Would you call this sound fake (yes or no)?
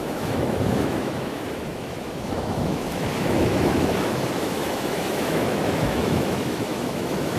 yes